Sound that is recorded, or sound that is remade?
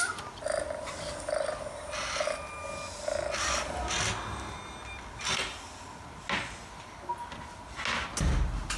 recorded